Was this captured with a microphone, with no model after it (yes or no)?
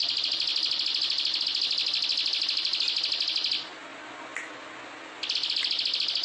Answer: yes